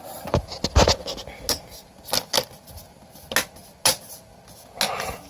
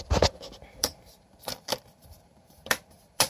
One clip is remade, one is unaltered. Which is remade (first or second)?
second